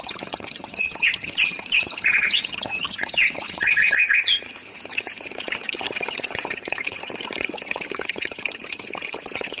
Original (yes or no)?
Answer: no